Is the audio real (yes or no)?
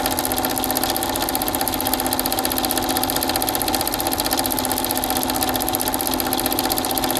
yes